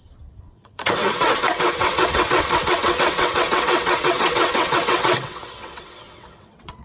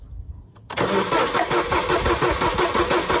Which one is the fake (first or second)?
first